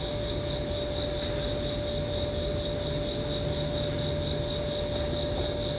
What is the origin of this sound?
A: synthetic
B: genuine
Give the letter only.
B